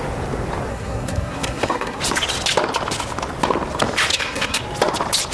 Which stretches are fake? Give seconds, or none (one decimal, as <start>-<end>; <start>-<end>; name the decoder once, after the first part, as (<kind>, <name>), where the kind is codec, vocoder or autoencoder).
0.7-2.0 (codec, SNAC); 4.1-4.6